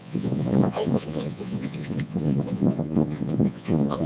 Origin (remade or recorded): remade